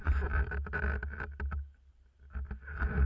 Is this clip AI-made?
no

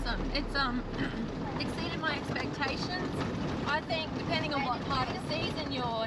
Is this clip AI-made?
no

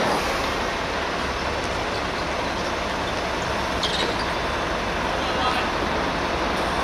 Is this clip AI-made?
no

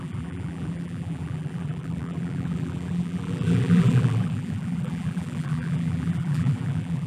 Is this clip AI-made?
yes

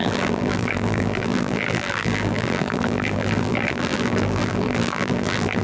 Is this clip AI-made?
yes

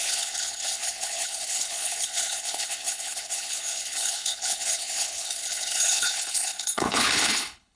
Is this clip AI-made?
yes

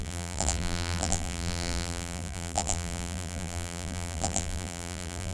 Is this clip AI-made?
yes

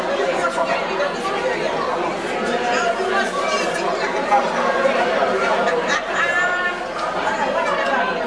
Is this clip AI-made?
no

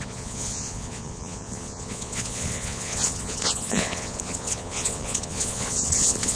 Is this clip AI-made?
yes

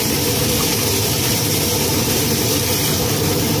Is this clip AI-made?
yes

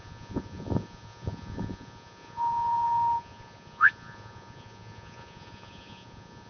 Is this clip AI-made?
yes